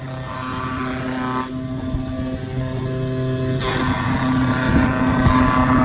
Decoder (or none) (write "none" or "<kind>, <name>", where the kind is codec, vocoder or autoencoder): none